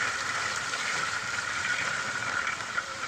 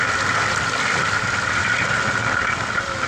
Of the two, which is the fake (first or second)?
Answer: first